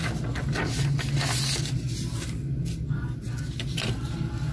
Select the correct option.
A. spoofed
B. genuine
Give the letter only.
B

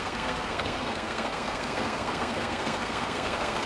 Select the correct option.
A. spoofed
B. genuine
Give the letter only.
A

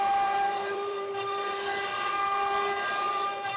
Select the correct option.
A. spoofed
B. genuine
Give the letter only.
A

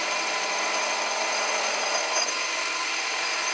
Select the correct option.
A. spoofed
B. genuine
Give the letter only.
B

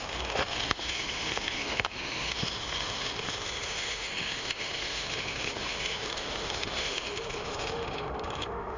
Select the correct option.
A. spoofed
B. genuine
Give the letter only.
A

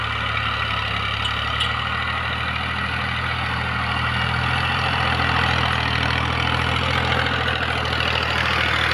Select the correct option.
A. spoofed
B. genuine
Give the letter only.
B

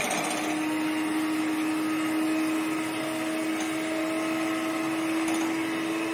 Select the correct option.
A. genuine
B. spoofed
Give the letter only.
A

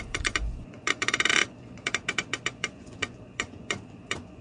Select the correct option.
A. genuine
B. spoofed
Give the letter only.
B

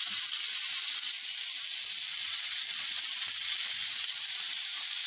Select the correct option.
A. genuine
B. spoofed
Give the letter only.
A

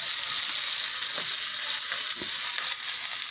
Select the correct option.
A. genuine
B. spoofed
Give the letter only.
A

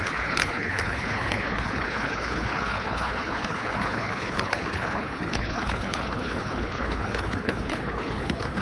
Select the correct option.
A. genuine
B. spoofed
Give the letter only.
B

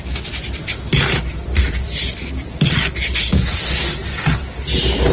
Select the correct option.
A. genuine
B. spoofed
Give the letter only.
A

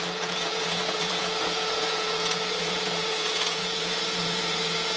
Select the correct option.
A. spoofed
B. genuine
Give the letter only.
A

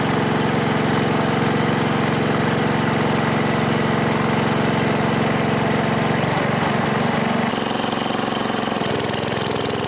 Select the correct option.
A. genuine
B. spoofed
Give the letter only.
A